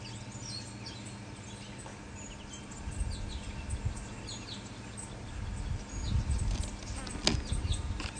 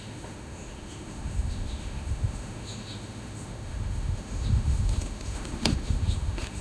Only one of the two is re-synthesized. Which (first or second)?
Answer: second